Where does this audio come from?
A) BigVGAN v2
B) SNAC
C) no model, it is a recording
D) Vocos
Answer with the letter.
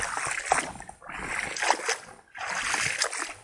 C